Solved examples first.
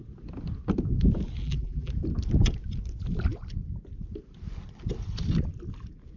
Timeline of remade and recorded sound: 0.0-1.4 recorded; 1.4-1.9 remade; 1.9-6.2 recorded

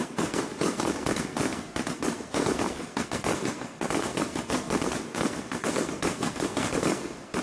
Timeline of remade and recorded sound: 0.0-7.4 remade

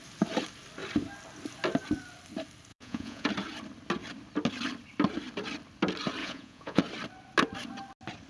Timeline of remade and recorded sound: 0.0-2.7 recorded; 2.7-3.3 remade; 3.3-6.2 recorded; 6.2-6.8 remade; 6.8-8.3 recorded

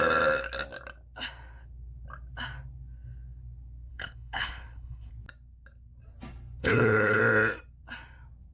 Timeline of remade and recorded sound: 0.0-3.9 recorded; 3.9-5.1 remade; 5.1-6.6 recorded; 6.6-7.2 remade; 7.2-8.5 recorded

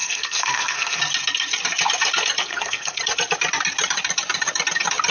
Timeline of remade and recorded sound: 0.0-1.0 remade; 1.0-2.4 recorded; 2.4-3.0 remade; 3.0-5.1 recorded

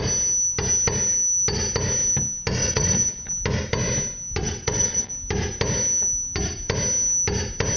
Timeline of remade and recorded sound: 0.0-2.6 recorded; 2.6-3.3 remade; 3.3-4.4 recorded; 4.4-5.1 remade; 5.1-7.8 recorded

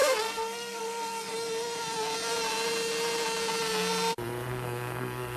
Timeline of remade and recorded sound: 0.0-1.3 remade; 1.3-4.5 recorded; 4.5-5.4 remade

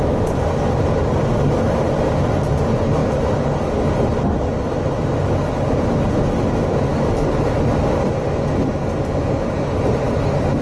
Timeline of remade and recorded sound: 0.0-10.6 recorded